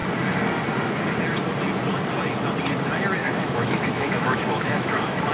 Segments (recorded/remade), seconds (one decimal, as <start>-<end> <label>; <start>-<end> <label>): 0.0-3.2 recorded; 3.2-5.3 remade